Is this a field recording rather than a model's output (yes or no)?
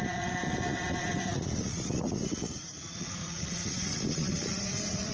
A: no